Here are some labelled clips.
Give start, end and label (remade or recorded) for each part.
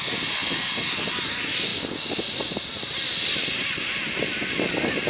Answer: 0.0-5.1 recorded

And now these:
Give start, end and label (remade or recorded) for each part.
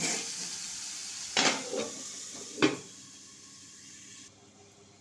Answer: 0.0-5.0 recorded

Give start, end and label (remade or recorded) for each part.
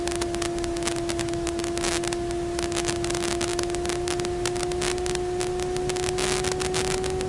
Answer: 0.0-7.3 recorded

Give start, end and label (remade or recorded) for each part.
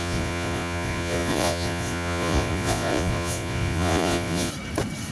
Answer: 0.0-4.5 remade; 4.5-5.1 recorded